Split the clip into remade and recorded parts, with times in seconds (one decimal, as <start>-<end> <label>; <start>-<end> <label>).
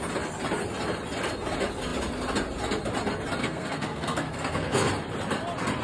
0.0-3.4 recorded; 3.4-4.9 remade; 4.9-5.8 recorded